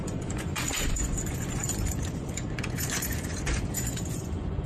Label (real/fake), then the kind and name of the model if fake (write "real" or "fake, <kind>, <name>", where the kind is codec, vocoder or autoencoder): fake, vocoder, Vocos